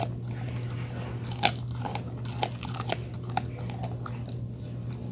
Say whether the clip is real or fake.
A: real